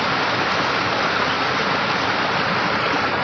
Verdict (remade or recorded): recorded